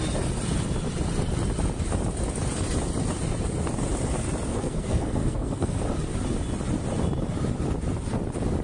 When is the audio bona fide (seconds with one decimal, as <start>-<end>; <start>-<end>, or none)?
0.0-4.5; 5.8-8.6